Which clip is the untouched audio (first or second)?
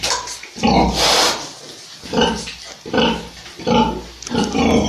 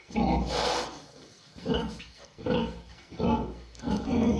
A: first